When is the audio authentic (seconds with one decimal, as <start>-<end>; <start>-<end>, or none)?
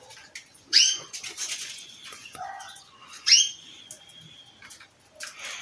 0.0-0.5; 3.9-5.6